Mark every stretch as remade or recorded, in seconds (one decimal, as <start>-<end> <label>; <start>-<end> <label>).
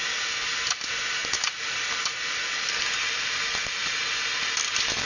0.0-5.1 recorded